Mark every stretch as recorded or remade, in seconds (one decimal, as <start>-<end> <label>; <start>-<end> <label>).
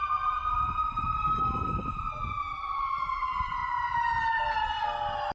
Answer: 0.0-5.3 recorded